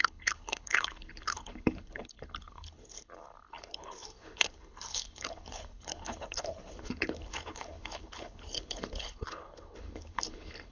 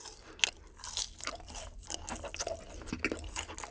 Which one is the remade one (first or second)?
first